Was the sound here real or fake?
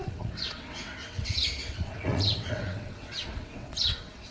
fake